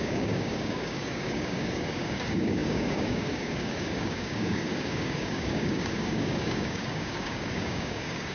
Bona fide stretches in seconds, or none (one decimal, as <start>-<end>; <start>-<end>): none